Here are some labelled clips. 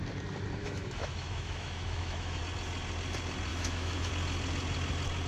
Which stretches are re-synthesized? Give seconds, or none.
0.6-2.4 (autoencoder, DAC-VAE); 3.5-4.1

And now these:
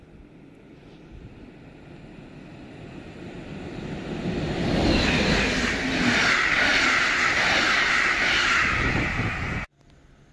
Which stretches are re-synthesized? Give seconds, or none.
none